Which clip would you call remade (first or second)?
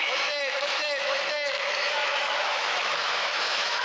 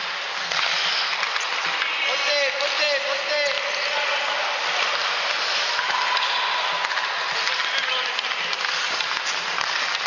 first